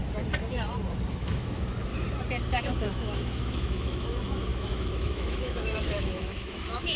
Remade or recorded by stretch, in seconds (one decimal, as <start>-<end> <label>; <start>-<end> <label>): 0.0-1.1 recorded; 1.1-1.9 remade; 1.9-2.6 recorded; 2.6-7.0 remade